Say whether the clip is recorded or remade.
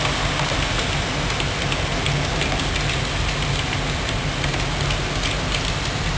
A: recorded